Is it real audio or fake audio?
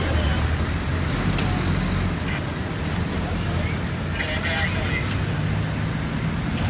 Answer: real